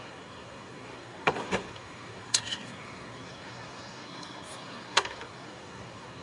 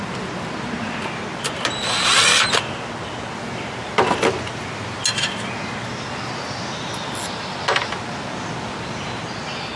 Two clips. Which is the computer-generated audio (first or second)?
first